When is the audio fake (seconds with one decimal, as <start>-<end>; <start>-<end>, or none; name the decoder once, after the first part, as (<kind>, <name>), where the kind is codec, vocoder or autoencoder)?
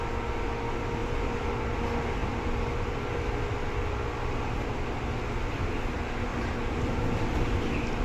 1.0-1.5 (vocoder, BigVGAN v2); 6.3-6.8